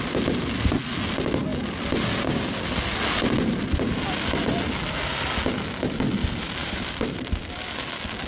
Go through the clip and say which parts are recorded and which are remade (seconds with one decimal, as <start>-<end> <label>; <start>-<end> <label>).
0.0-6.6 recorded; 6.6-7.4 remade; 7.4-8.3 recorded